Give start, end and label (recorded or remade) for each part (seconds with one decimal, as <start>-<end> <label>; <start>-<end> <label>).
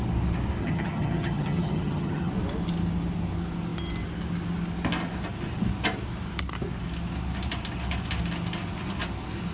0.0-0.6 recorded; 0.6-2.3 remade; 2.3-9.5 recorded